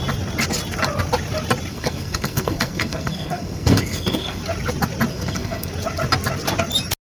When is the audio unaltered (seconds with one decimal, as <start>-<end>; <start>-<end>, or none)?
0.0-1.7; 4.4-5.1; 5.7-7.2